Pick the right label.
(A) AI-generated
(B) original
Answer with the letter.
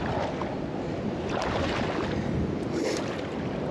B